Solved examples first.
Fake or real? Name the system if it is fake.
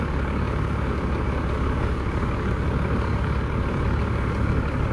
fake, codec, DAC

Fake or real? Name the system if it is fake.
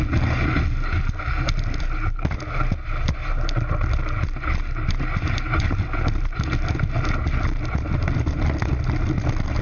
real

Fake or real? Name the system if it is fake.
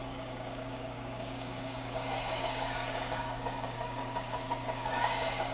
fake, codec, DAC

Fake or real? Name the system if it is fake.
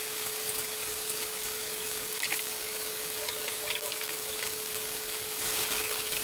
fake, codec, DAC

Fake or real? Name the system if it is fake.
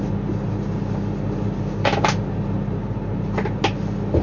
real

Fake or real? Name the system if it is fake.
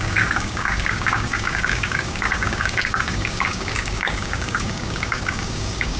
fake, codec, DAC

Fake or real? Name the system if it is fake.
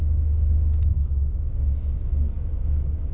fake, codec, DAC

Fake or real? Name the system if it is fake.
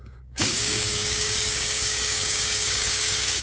fake, codec, DAC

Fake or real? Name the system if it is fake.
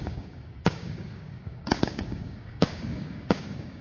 fake, codec, DAC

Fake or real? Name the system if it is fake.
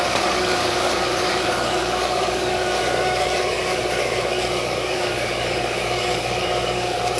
fake, codec, DAC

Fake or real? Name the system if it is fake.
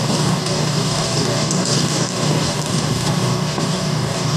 fake, codec, DAC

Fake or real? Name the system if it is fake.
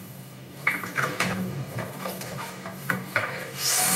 fake, codec, DAC